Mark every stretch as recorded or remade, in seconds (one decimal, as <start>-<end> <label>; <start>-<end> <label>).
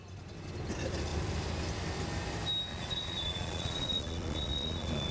0.0-2.7 recorded; 2.7-5.1 remade